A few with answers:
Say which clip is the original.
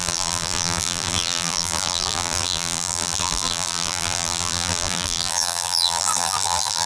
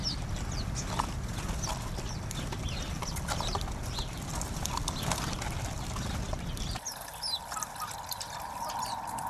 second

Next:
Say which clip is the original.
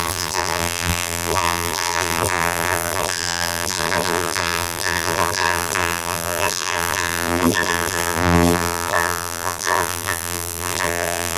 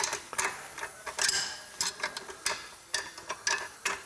second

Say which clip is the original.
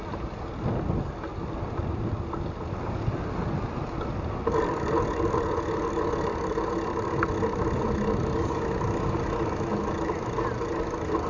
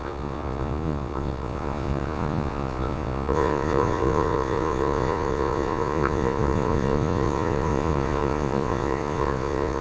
first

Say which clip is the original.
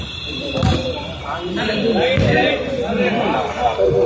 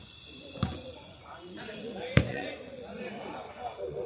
first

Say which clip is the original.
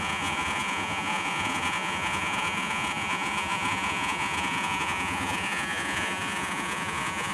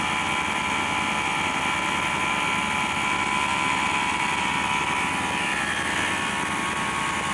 second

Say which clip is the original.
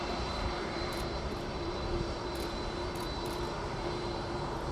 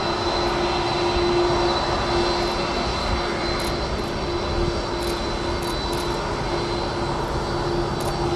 second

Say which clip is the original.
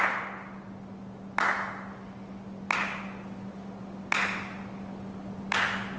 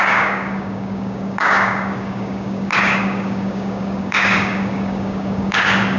first